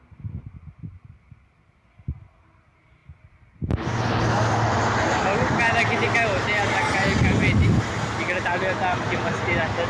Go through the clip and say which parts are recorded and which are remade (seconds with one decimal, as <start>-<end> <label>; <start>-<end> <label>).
0.0-9.9 recorded